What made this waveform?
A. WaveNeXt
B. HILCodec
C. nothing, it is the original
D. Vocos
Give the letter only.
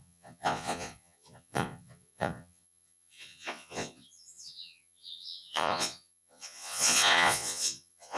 D